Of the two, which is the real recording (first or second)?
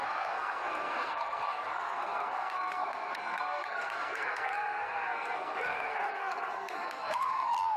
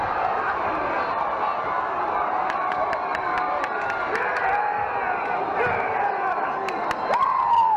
second